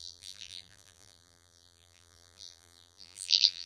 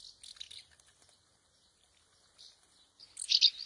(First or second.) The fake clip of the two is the first